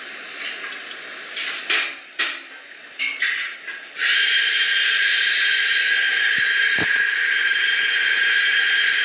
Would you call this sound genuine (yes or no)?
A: yes